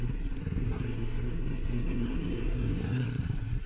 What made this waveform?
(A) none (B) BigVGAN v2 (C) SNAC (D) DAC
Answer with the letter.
C